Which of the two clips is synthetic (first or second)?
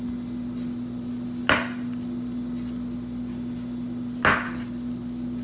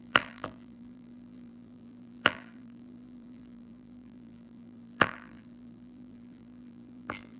second